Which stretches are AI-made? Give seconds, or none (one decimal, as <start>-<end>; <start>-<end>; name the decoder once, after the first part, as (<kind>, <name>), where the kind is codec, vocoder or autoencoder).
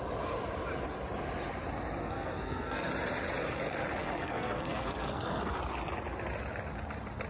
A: 2.0-2.9 (codec, SNAC); 4.0-5.6